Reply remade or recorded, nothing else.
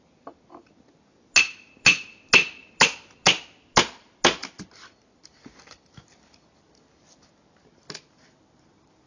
recorded